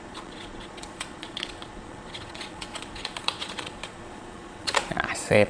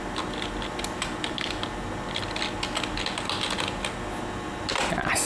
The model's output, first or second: first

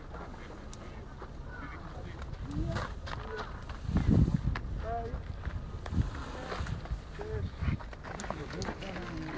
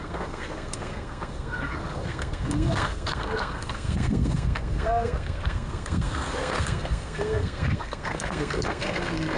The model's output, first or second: second